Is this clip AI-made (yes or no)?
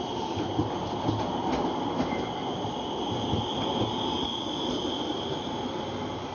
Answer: no